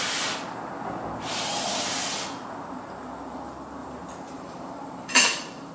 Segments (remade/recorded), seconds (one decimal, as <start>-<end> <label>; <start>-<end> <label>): 0.0-3.8 recorded; 3.8-5.7 remade